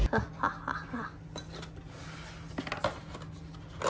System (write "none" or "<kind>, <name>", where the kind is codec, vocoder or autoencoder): none